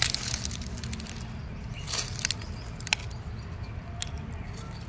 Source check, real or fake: real